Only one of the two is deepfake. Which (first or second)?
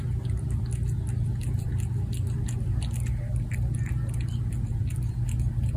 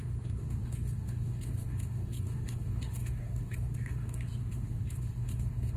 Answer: second